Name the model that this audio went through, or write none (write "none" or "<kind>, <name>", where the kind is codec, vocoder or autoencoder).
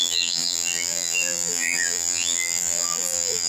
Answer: vocoder, BigVGAN v2